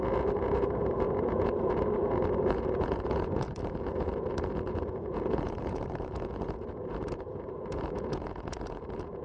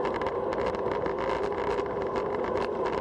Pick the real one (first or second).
second